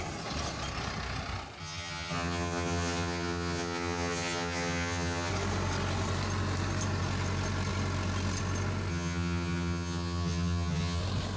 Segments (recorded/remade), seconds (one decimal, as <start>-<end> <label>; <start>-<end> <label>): 0.0-1.6 recorded; 1.6-5.3 remade; 5.3-8.9 recorded; 8.9-11.0 remade; 11.0-11.4 recorded